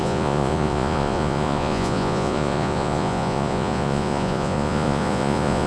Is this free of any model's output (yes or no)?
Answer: no